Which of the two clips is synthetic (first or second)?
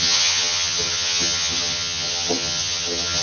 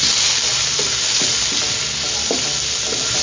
first